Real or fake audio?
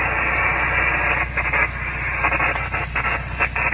real